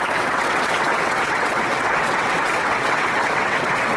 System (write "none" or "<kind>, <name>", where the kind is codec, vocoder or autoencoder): vocoder, WaveNeXt